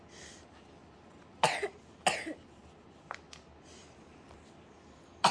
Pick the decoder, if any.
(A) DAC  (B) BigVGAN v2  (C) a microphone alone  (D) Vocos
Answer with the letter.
C